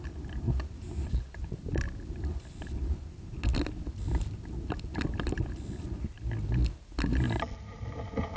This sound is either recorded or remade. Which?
recorded